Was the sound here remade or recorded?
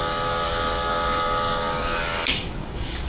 remade